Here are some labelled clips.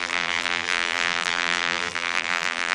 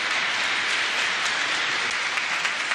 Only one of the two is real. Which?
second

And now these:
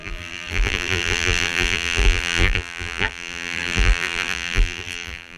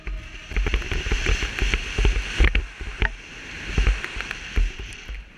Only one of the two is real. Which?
second